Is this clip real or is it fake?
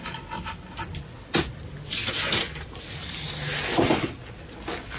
real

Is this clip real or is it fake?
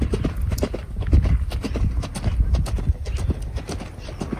real